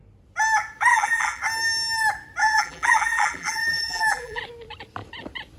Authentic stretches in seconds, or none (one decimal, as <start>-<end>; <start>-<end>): 0.0-0.9; 1.4-2.4; 4.4-5.6

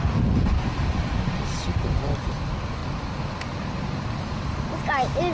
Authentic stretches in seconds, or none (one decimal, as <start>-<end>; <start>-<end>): 0.0-0.4; 2.3-5.3

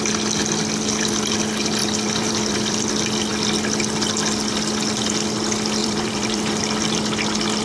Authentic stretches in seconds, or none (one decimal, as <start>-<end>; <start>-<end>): 0.0-1.8; 2.9-5.8; 6.6-7.6

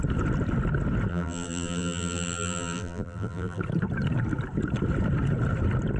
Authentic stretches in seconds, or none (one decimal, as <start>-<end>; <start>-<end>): 0.0-1.1; 3.6-6.0

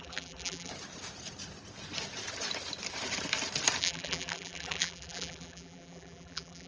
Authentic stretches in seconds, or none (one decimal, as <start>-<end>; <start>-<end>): 0.7-3.8

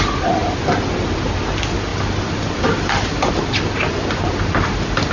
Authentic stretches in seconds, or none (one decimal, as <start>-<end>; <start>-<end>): 0.0-1.9

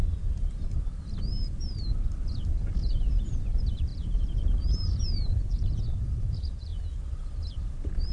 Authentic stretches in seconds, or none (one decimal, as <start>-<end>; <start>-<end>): 0.0-1.2; 6.7-7.5

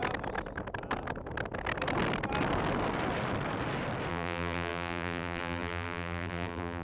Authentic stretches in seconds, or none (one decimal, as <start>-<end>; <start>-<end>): 0.0-4.1